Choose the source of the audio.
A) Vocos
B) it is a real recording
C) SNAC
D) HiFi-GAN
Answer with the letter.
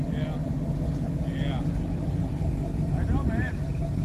B